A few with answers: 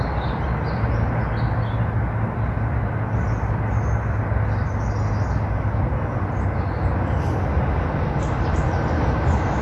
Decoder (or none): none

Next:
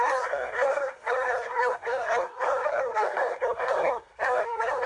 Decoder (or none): codec, SNAC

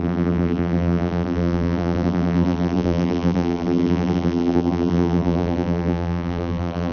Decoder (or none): vocoder, BigVGAN v2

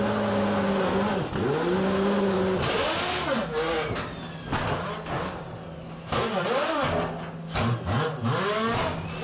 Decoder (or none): none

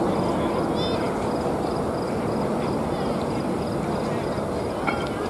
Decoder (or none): none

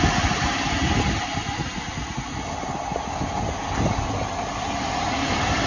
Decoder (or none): none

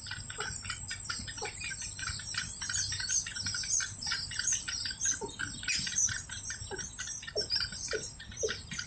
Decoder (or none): none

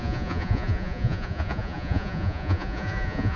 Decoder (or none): vocoder, Vocos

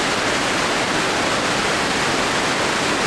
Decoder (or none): none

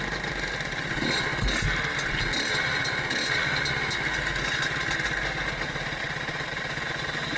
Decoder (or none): none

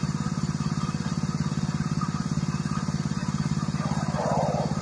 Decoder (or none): none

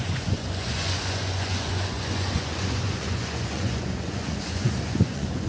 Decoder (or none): vocoder, Vocos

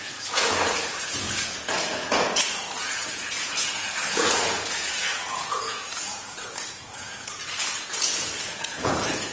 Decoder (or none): vocoder, Vocos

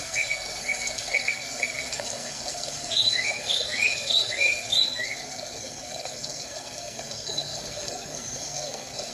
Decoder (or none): codec, SNAC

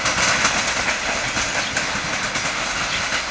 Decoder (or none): none